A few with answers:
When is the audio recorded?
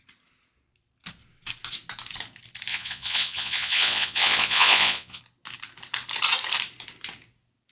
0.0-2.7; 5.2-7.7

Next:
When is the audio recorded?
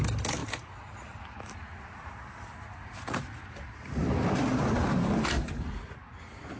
0.0-6.6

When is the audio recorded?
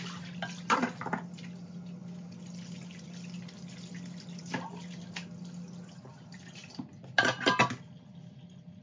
0.0-8.8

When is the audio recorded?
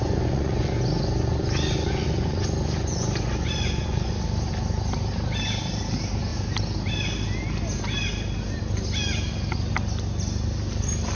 4.1-11.2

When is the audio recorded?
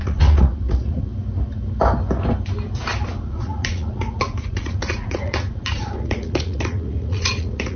1.1-3.2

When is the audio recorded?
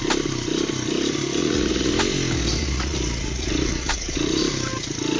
0.0-1.4; 1.9-2.6; 4.4-5.2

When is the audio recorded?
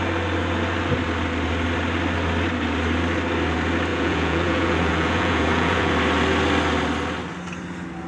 0.0-3.9; 5.9-8.1